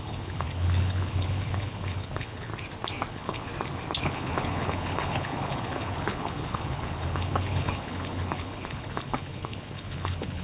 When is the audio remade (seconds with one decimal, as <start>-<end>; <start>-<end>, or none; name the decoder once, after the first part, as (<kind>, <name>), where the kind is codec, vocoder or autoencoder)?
0.0-2.5 (codec, HILCodec); 3.1-3.5; 4.0-10.4